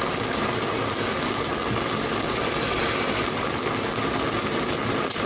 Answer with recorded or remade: recorded